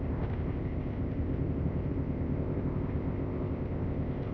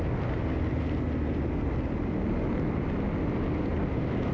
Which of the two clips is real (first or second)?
second